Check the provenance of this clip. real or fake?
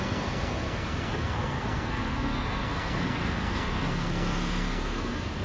fake